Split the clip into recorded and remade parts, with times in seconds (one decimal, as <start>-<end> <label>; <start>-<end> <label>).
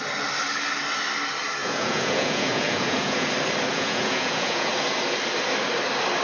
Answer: 0.0-1.6 recorded; 1.6-3.3 remade; 3.3-3.7 recorded; 3.7-4.7 remade; 4.7-6.2 recorded